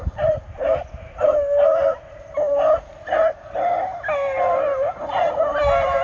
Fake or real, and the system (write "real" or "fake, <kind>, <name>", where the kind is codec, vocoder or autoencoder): real